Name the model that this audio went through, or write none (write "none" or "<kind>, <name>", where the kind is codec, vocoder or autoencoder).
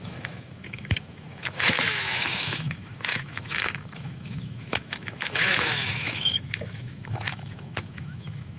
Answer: autoencoder, DAC-VAE